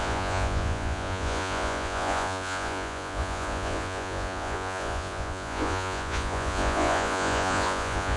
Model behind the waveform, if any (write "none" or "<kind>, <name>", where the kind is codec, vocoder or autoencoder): vocoder, Vocos